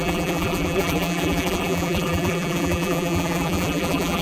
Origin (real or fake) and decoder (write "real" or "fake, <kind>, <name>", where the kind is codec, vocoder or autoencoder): fake, vocoder, BigVGAN v2